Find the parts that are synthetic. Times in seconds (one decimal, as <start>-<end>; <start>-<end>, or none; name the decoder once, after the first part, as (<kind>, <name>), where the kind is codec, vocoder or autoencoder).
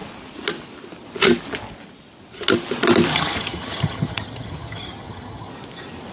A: 3.1-5.5 (vocoder, HiFi-GAN)